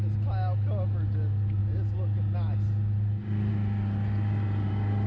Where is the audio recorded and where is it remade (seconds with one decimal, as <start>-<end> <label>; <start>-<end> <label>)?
0.0-5.1 recorded